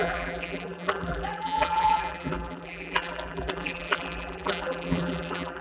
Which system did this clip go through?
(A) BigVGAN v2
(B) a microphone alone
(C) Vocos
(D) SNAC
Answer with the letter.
A